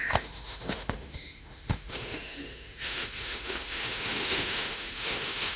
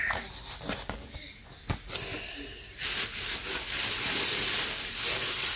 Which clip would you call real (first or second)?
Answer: second